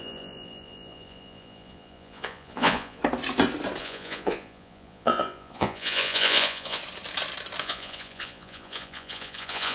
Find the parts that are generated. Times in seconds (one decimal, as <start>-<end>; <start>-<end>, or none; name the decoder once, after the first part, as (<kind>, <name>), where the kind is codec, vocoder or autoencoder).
0.0-3.0 (vocoder, Vocos); 3.8-6.8; 7.6-9.7